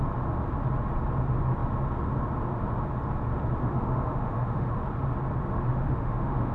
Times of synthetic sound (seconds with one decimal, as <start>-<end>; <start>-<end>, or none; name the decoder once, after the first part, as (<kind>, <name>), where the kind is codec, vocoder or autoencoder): 3.6-4.7 (autoencoder, DAC-VAE); 5.7-6.5